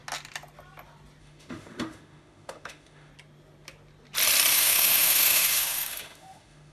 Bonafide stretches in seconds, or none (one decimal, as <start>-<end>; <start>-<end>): 0.0-1.2; 3.1-4.5